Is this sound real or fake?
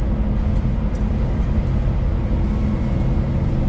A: real